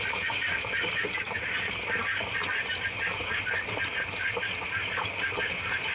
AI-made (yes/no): no